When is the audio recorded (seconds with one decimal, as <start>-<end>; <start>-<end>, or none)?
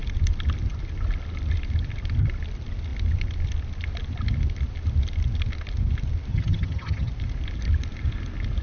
0.0-6.3; 7.1-8.6